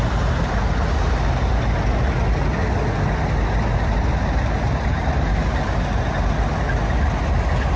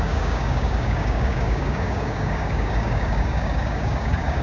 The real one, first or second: first